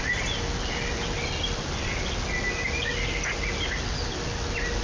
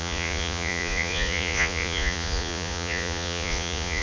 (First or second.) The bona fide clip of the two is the first